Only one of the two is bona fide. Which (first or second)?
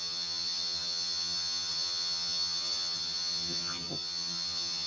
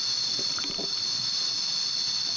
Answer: second